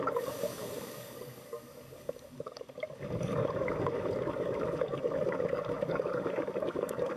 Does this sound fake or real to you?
fake